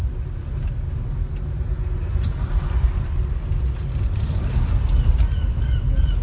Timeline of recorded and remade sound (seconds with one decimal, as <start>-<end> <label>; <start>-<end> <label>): 0.0-2.1 recorded; 2.1-5.8 remade; 5.8-6.2 recorded